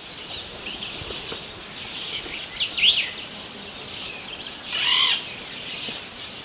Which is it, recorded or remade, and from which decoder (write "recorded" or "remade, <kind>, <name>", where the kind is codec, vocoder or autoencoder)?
recorded